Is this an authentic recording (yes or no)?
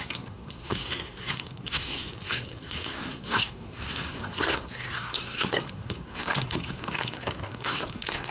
no